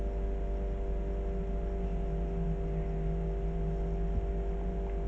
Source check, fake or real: real